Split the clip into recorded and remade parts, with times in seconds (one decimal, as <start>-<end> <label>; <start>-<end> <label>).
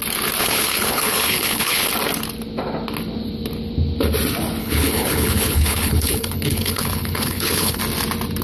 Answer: 0.0-0.4 recorded; 0.4-1.9 remade; 1.9-4.6 recorded; 4.6-7.8 remade; 7.8-8.4 recorded